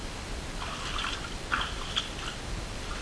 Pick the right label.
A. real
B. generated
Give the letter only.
A